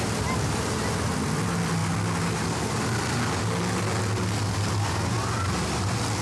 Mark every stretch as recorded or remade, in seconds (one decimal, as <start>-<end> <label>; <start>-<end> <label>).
0.0-6.2 recorded